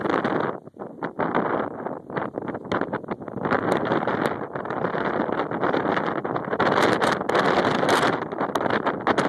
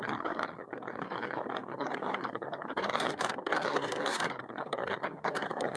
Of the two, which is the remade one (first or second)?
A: second